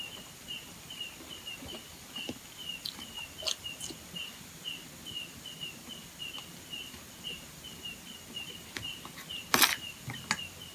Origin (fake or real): real